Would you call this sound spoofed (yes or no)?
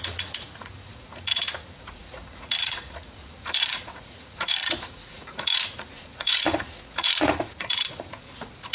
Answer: yes